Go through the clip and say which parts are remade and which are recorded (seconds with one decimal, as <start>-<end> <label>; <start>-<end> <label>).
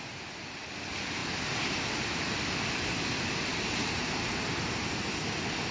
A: 0.0-5.7 recorded